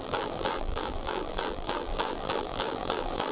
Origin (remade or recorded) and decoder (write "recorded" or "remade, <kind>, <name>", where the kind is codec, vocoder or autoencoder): remade, vocoder, BigVGAN v2